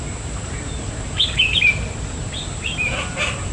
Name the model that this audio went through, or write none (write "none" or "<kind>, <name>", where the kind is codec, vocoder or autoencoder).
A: vocoder, BigVGAN v2